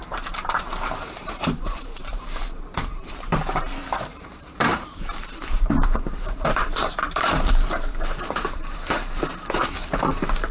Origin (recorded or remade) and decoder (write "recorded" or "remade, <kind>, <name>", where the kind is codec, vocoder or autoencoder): remade, vocoder, BigVGAN v2